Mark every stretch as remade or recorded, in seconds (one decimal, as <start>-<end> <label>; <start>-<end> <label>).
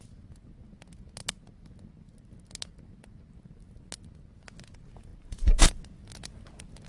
0.0-5.1 recorded; 5.1-5.8 remade; 5.8-6.9 recorded